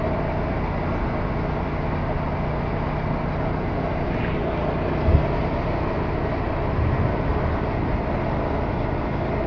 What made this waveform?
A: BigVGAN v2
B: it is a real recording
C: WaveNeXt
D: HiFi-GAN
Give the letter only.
B